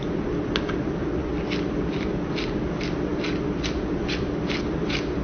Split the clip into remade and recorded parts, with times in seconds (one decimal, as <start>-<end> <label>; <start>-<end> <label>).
0.0-5.2 recorded